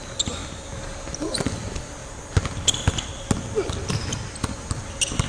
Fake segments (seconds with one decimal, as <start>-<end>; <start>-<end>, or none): none